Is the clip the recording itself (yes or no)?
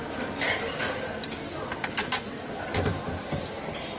yes